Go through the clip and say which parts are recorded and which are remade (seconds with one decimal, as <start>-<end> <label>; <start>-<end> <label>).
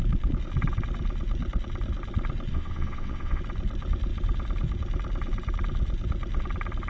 0.0-2.5 recorded; 2.5-3.4 remade; 3.4-6.9 recorded